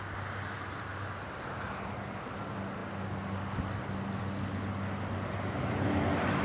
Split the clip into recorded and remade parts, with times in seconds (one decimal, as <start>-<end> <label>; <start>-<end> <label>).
0.0-6.4 recorded